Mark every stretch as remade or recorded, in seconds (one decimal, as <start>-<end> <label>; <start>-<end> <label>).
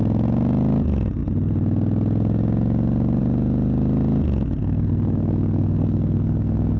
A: 0.0-4.6 recorded; 4.6-6.8 remade